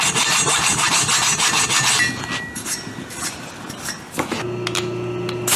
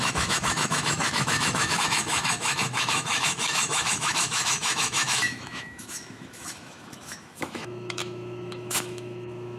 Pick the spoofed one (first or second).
second